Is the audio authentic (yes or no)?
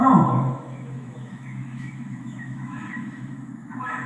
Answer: no